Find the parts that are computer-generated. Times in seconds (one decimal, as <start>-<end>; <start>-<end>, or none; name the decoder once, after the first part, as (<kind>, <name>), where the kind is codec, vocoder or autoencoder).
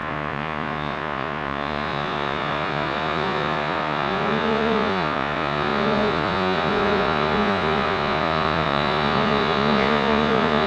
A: 0.0-10.7 (vocoder, Vocos)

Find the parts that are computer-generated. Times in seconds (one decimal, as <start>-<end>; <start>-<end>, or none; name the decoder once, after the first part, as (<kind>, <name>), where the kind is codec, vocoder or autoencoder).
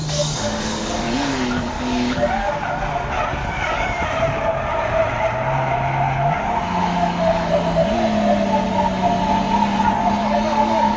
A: 0.0-2.5 (codec, DAC); 3.4-4.0; 6.8-7.5; 10.2-11.0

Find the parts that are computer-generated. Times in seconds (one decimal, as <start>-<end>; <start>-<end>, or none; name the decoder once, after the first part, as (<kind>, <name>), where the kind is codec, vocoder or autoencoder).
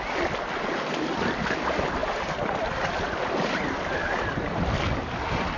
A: none